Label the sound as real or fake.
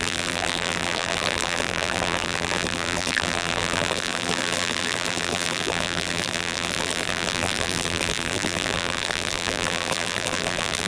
fake